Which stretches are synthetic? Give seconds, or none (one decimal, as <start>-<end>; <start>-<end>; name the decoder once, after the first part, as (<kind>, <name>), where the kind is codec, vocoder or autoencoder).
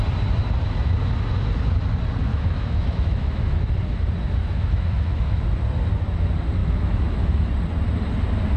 2.3-3.7 (autoencoder, DAC-VAE); 4.4-5.4; 6.6-7.5